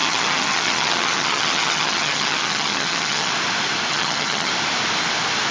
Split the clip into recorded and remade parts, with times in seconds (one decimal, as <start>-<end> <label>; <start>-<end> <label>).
0.0-3.3 remade; 3.3-3.9 recorded; 3.9-4.5 remade; 4.5-5.5 recorded